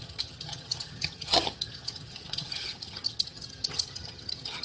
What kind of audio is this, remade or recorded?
remade